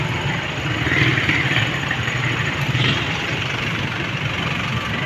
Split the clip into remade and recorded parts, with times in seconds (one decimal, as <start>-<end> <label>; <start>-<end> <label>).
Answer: 0.0-1.1 recorded; 1.1-4.2 remade; 4.2-5.1 recorded

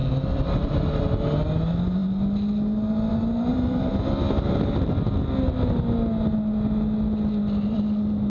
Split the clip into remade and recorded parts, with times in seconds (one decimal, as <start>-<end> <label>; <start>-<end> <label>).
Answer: 0.0-3.5 recorded; 3.5-4.1 remade; 4.1-8.3 recorded

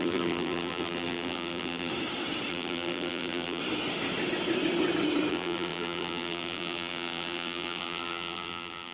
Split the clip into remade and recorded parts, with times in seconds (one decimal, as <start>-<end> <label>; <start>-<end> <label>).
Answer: 0.0-1.9 remade; 1.9-2.5 recorded; 2.5-3.6 remade; 3.6-5.3 recorded; 5.3-8.9 remade